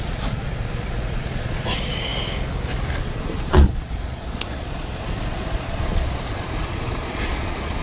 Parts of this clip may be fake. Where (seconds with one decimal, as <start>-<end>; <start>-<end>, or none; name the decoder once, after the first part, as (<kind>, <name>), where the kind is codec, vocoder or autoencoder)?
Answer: 0.0-2.1 (vocoder, Vocos); 3.0-7.8